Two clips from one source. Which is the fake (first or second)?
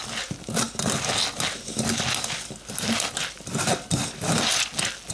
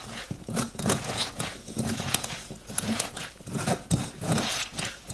second